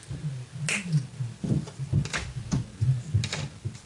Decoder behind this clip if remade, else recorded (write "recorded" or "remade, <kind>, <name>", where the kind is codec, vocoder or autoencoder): recorded